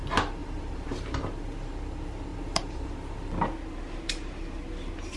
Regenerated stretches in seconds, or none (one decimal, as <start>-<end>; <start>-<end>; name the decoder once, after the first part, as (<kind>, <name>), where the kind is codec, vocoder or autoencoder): 0.4-1.5 (vocoder, BigVGAN v2); 2.3-2.9